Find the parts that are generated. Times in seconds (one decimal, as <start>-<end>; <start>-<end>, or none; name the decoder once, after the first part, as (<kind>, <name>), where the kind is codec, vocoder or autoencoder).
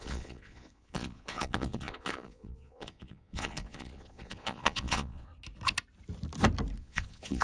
0.0-5.3 (vocoder, Vocos); 6.8-7.4